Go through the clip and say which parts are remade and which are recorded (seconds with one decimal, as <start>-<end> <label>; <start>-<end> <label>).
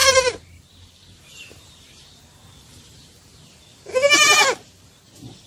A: 0.0-3.3 remade; 3.3-5.5 recorded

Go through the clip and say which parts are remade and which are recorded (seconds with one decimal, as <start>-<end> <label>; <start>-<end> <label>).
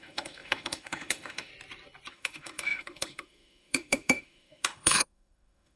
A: 0.0-1.5 remade; 1.5-2.1 recorded; 2.1-5.8 remade